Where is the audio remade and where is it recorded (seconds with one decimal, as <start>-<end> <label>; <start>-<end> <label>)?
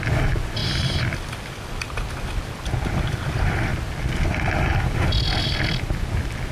0.0-6.5 recorded